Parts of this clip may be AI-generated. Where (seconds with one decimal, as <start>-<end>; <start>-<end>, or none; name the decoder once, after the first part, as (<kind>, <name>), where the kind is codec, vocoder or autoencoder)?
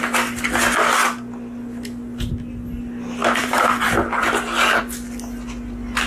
3.2-4.8 (vocoder, BigVGAN v2)